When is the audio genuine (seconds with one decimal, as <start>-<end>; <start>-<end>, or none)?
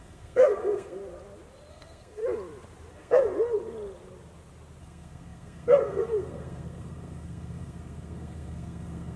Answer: 1.0-1.7; 2.2-2.9; 3.3-4.8